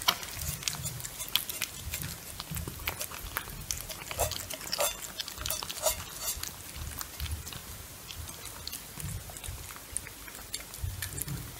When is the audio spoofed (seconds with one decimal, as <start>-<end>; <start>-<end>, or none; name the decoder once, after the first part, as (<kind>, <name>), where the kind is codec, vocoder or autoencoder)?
none